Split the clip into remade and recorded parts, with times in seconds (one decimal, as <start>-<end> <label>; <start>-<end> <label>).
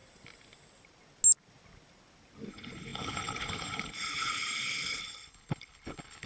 0.0-2.5 recorded; 2.5-6.3 remade